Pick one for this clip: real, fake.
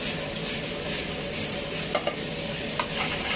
real